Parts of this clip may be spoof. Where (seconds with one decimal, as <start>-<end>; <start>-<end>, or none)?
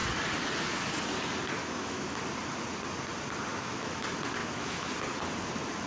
1.6-2.2; 3.5-4.0; 4.4-4.9